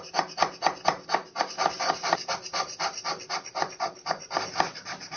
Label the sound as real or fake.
real